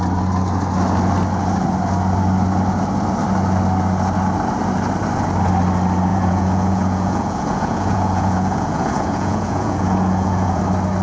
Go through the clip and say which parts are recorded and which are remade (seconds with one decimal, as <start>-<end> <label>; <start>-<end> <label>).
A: 0.0-6.1 recorded; 6.1-10.6 remade; 10.6-11.0 recorded